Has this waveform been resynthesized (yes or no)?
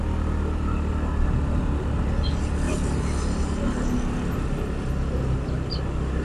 no